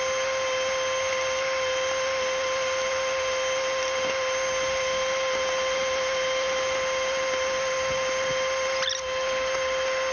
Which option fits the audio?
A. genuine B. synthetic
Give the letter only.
A